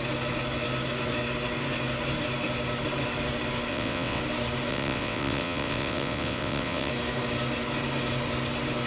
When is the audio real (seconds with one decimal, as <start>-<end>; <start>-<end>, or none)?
0.0-3.7; 4.2-4.7; 6.9-8.9